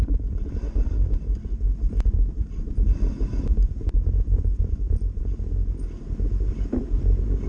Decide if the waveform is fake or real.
real